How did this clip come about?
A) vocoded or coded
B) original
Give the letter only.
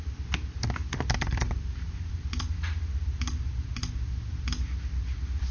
B